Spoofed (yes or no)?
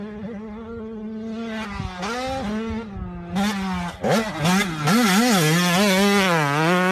no